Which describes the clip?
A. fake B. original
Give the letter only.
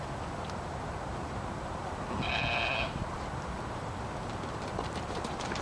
B